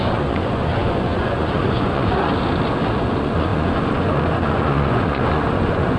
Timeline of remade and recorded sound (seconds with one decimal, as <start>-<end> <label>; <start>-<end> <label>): 0.0-2.3 remade; 2.3-2.9 recorded; 2.9-6.0 remade

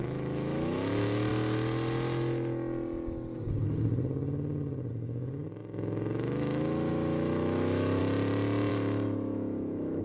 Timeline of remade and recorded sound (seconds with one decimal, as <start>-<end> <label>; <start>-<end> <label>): 0.0-1.3 remade; 1.3-4.9 recorded; 4.9-8.0 remade; 8.0-8.7 recorded; 8.7-10.0 remade

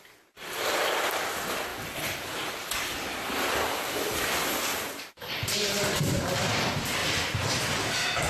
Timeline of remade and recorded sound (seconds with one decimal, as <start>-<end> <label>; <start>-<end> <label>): 0.0-8.3 recorded